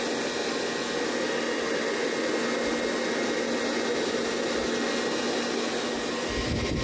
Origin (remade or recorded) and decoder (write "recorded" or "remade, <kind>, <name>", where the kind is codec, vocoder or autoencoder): recorded